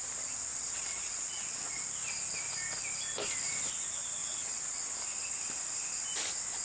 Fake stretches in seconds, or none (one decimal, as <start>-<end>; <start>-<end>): 0.5-1.8; 4.2-4.9